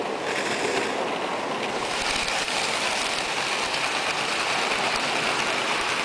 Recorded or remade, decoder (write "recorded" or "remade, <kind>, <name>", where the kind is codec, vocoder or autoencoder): recorded